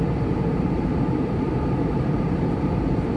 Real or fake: fake